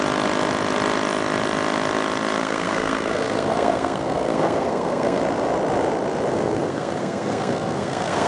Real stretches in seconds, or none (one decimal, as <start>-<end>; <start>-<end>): 0.0-2.4; 5.2-6.3